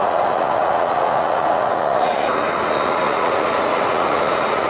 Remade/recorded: remade